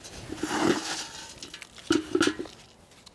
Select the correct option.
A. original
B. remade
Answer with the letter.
A